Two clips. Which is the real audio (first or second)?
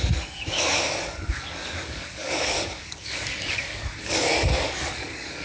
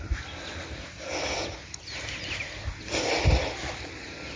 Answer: second